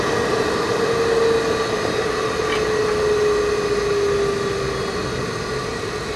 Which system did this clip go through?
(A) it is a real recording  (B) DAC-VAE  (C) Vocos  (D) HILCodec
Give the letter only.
A